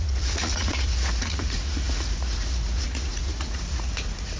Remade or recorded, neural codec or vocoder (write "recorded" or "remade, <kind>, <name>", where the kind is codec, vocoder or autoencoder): remade, vocoder, Vocos